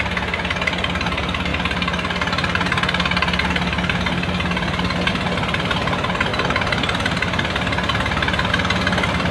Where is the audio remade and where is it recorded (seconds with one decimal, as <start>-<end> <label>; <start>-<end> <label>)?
0.0-9.3 recorded

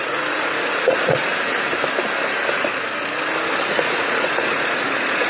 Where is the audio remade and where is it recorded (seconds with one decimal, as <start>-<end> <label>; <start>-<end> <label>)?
0.0-1.3 remade; 1.3-3.7 recorded; 3.7-5.3 remade

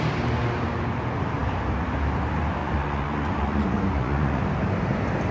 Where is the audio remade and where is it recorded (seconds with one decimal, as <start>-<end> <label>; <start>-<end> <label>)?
0.0-2.6 recorded; 2.6-4.4 remade; 4.4-5.3 recorded

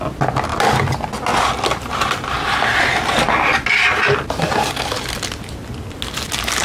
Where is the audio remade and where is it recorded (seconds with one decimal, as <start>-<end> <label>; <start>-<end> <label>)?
0.0-6.6 recorded

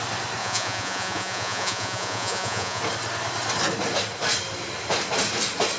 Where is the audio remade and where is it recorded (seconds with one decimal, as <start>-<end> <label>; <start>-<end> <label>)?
0.0-0.4 recorded; 0.4-2.8 remade; 2.8-5.8 recorded